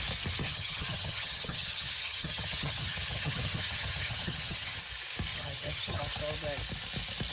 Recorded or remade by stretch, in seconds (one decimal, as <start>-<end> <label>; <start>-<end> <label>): 0.0-0.4 recorded; 0.4-4.8 remade; 4.8-5.3 recorded; 5.3-6.0 remade; 6.0-7.3 recorded